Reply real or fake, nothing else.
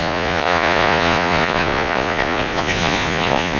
fake